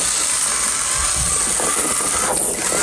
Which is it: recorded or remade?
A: recorded